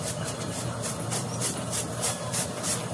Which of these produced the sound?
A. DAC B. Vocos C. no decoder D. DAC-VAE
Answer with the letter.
C